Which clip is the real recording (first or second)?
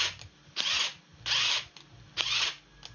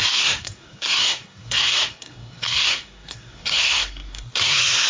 first